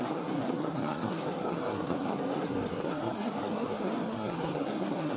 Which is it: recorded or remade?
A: remade